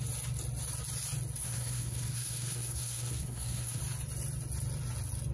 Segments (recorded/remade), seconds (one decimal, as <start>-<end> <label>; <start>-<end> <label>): 0.0-1.4 recorded; 1.4-3.8 remade; 3.8-5.3 recorded